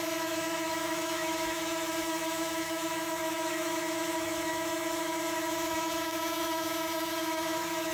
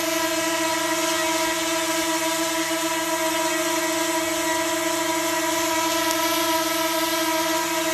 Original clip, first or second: second